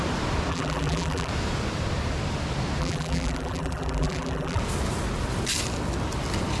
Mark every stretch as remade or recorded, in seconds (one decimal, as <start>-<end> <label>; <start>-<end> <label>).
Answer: 0.0-0.5 recorded; 0.5-1.3 remade; 1.3-2.8 recorded; 2.8-4.6 remade; 4.6-6.6 recorded